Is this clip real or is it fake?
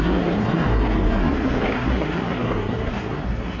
fake